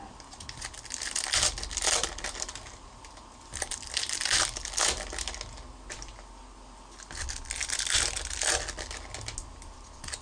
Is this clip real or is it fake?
real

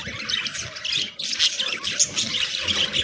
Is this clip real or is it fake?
real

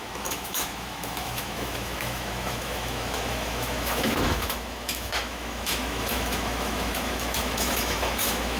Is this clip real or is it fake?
fake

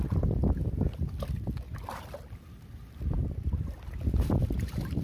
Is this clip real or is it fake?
real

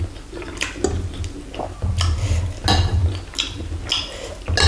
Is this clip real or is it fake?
real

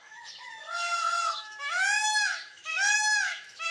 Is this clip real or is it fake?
fake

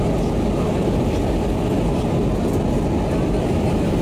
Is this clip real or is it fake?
real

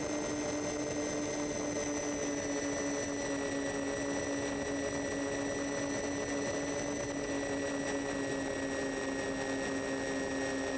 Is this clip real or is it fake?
real